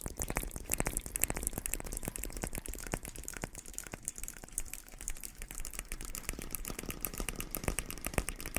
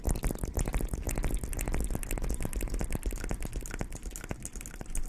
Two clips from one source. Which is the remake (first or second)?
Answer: first